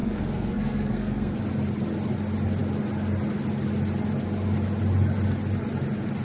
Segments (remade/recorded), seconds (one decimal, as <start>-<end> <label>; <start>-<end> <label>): 0.0-1.4 remade; 1.4-6.2 recorded